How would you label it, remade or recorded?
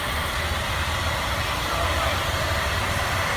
remade